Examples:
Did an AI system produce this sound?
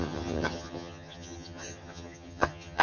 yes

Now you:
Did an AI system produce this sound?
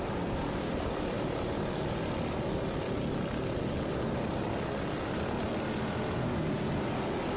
no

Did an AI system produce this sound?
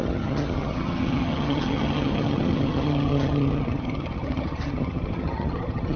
yes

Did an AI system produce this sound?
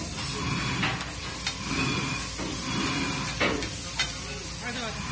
no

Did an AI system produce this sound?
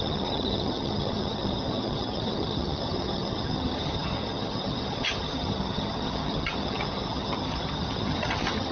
yes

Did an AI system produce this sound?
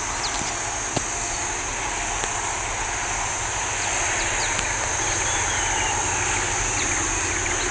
no